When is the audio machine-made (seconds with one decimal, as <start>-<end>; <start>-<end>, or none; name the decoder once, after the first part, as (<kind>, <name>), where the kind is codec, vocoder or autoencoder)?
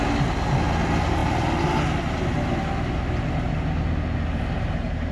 none